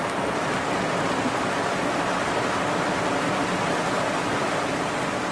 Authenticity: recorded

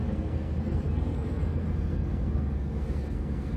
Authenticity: remade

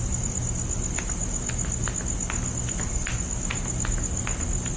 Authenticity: recorded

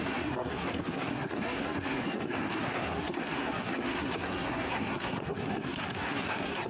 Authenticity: remade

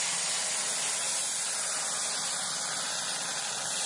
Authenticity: recorded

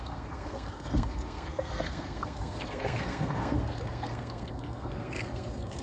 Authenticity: remade